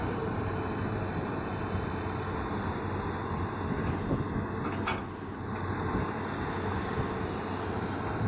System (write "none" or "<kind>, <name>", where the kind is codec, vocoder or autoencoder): none